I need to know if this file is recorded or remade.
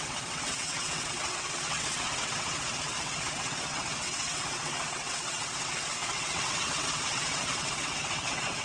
remade